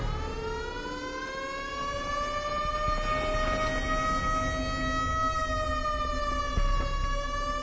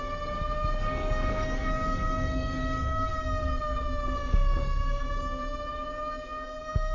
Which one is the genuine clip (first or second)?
first